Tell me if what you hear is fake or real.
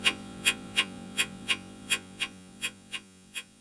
fake